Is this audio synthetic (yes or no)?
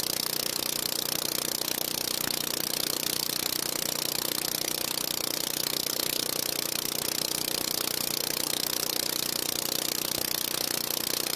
no